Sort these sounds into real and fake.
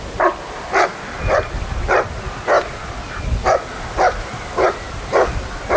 real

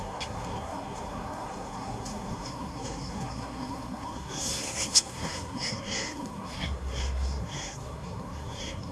fake